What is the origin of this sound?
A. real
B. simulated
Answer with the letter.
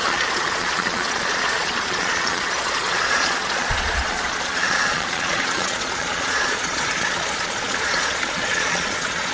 B